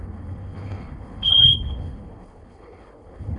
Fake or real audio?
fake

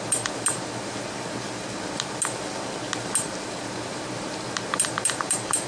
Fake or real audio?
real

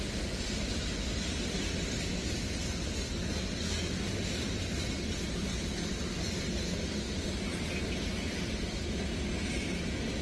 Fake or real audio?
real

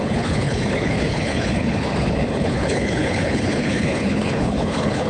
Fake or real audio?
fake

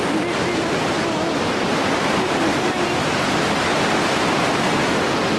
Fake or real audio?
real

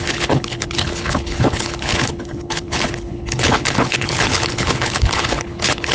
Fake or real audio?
fake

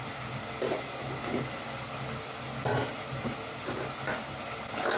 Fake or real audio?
real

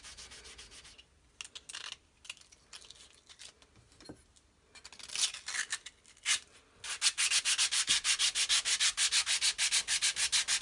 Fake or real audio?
real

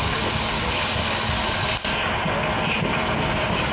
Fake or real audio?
real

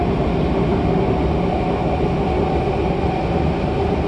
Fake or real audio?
real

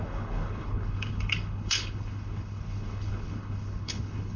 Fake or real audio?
fake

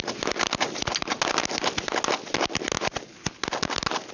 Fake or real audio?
real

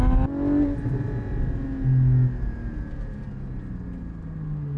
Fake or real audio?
real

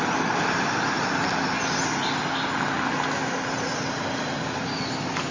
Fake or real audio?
real